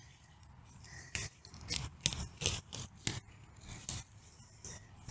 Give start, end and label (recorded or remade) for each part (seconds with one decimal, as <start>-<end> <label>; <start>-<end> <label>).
0.0-5.1 recorded